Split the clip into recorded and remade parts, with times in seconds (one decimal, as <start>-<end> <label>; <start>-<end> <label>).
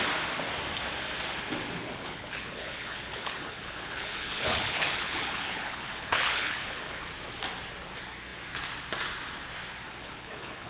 0.0-1.8 recorded; 1.8-7.0 remade; 7.0-10.0 recorded; 10.0-10.7 remade